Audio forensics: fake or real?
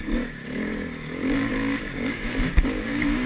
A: fake